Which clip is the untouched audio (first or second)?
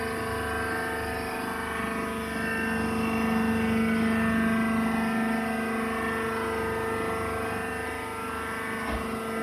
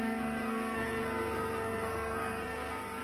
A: first